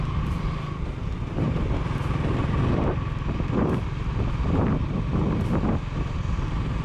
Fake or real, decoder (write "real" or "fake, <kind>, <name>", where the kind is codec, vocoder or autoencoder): real